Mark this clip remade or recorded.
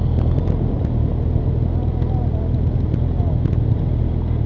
recorded